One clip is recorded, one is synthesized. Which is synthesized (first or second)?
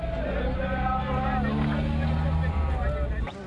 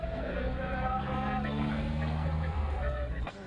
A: second